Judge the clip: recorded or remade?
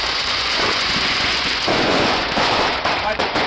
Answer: remade